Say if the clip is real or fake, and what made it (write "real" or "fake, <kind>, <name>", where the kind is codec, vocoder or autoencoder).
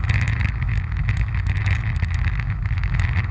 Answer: fake, autoencoder, DAC-VAE